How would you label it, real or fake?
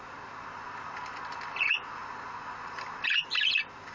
real